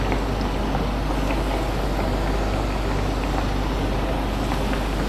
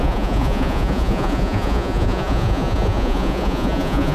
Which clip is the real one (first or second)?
first